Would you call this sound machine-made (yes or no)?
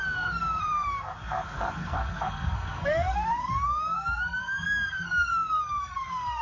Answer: yes